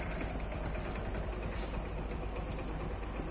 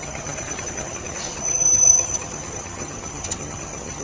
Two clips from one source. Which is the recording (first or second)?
first